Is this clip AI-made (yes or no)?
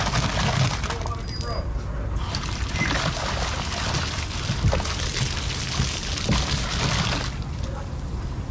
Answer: no